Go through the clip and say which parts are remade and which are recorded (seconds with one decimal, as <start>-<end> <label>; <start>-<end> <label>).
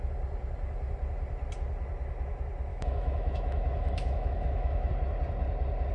0.0-2.7 recorded; 2.7-4.9 remade; 4.9-5.9 recorded